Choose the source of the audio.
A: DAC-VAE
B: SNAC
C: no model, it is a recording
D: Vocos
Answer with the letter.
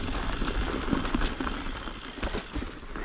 C